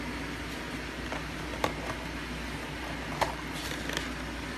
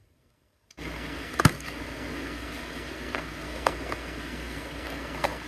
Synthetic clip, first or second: second